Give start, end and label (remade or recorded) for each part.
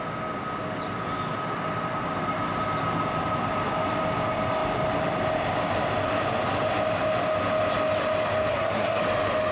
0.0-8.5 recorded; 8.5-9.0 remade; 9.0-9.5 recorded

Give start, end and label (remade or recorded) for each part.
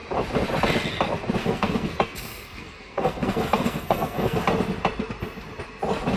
0.0-1.4 recorded; 1.4-4.4 remade; 4.4-6.2 recorded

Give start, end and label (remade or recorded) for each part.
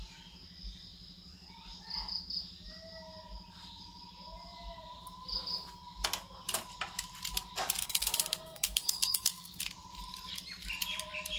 0.0-7.8 recorded; 7.8-9.6 remade; 9.6-11.4 recorded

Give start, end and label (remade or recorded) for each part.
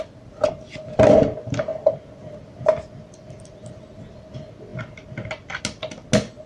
0.0-6.5 recorded